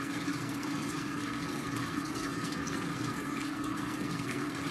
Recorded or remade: remade